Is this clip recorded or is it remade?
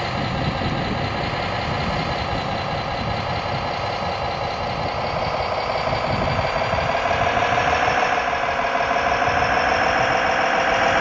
recorded